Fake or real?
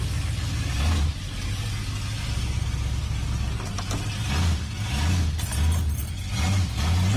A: real